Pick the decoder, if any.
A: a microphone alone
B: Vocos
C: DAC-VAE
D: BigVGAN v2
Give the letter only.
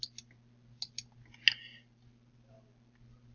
A